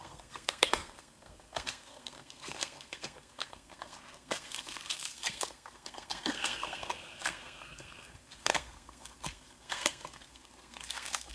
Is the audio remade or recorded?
remade